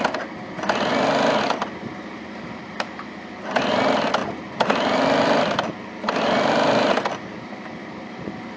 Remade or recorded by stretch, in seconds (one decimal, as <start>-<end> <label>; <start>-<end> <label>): 0.0-0.9 recorded; 0.9-3.1 remade; 3.1-4.2 recorded; 4.2-8.6 remade